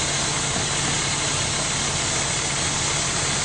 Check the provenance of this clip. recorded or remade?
recorded